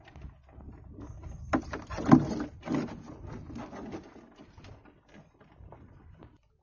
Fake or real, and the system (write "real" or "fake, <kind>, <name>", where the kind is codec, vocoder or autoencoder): real